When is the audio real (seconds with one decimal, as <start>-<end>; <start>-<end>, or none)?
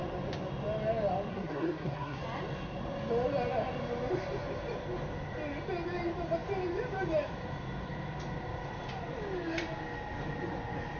0.0-1.3; 2.2-11.0